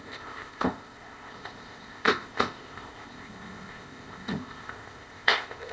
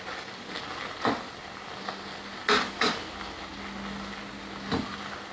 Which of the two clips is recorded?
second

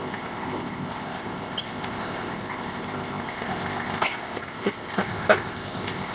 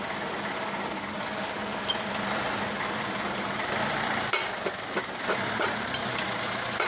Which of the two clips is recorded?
second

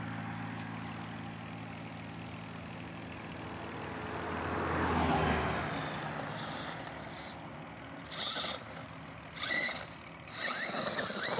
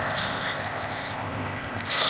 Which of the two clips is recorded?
first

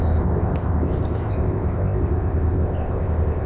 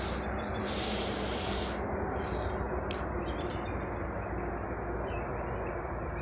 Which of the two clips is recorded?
second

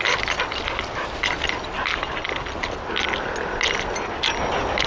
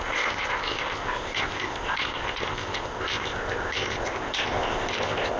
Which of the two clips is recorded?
first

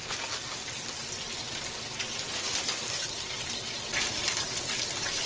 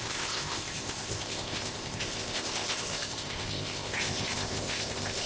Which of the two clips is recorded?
first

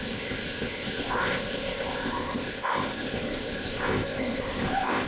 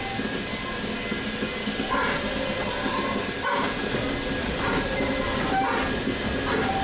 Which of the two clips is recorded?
second